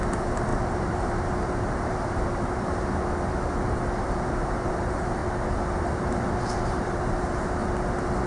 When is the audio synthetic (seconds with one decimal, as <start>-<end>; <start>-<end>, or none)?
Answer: 0.0-5.2; 6.4-7.6